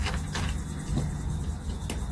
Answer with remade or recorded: recorded